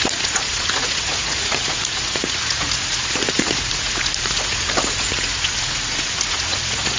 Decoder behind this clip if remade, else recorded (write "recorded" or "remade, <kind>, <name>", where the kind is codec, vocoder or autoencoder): remade, vocoder, Vocos